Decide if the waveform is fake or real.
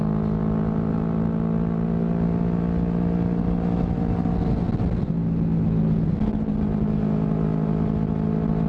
real